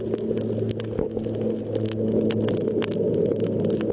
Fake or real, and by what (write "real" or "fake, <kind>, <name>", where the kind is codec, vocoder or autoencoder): real